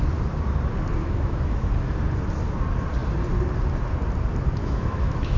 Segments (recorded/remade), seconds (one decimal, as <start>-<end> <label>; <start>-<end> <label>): 0.0-1.0 recorded; 1.0-1.7 remade; 1.7-4.6 recorded; 4.6-5.4 remade